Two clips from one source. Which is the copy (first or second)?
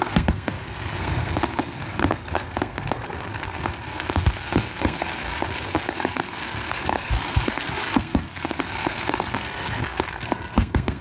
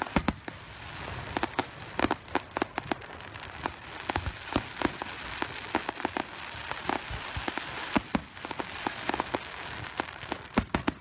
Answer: first